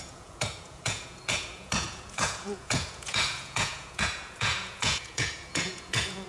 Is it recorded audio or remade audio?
remade